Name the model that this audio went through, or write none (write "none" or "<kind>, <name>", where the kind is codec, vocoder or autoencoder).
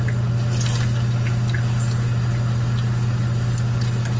none